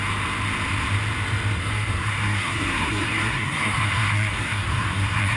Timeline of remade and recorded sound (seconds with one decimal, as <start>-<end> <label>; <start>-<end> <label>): 0.0-1.6 recorded; 1.6-5.4 remade